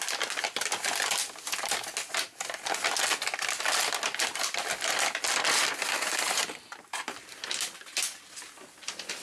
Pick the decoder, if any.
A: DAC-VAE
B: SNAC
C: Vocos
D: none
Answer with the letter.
D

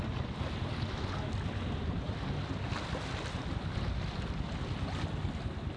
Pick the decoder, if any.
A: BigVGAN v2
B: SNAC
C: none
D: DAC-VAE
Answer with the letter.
C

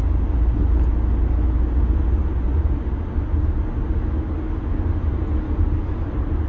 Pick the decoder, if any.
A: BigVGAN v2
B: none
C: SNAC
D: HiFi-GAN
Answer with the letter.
B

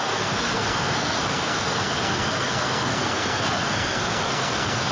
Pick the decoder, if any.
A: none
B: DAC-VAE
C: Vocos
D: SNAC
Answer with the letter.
D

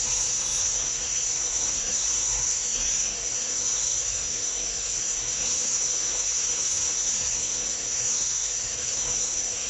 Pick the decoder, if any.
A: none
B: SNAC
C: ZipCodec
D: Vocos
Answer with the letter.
B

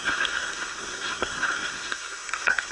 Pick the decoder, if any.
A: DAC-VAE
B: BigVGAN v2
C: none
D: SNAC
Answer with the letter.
D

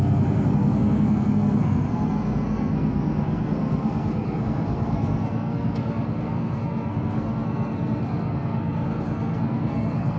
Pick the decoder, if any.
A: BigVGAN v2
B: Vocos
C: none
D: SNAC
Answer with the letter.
D